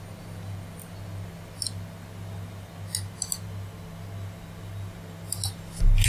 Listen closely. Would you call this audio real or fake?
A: real